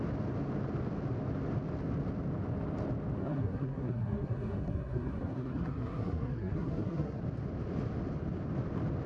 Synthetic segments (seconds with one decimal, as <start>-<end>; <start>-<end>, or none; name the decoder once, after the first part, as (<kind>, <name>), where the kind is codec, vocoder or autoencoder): 3.2-7.2 (codec, SNAC)